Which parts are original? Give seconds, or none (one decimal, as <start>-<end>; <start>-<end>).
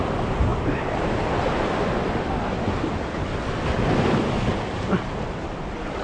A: 0.0-0.5; 1.7-4.5; 5.1-6.0